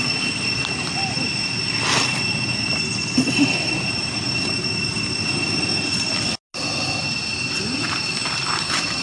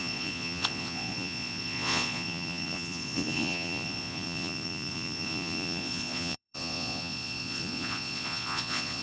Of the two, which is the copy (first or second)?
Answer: second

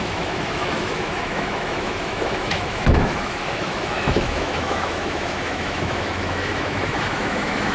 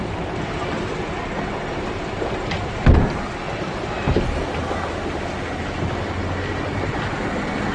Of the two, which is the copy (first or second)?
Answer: first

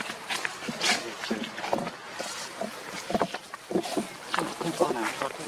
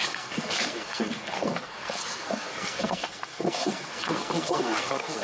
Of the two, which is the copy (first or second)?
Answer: second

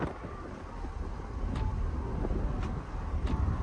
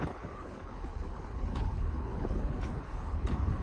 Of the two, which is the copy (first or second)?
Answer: second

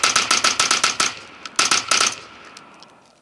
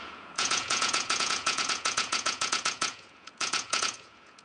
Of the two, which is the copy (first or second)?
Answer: second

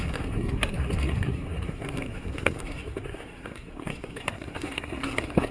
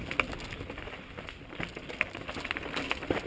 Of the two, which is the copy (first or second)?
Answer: first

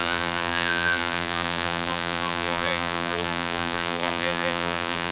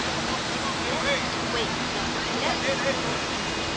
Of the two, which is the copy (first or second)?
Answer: first